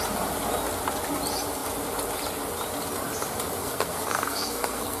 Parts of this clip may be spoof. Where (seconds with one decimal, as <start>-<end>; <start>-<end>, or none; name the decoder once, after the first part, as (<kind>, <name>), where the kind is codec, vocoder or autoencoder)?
3.6-5.0 (codec, SNAC)